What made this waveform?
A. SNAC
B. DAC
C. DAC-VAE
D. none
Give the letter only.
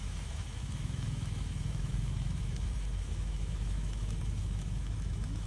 C